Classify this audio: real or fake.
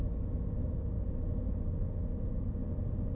real